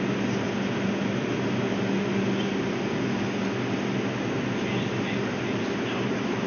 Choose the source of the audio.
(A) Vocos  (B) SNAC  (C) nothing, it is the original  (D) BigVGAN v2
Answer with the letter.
C